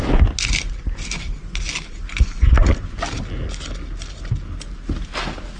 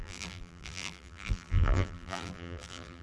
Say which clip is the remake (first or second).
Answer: second